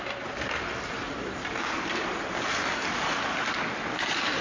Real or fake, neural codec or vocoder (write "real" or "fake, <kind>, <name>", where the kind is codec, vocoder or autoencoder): real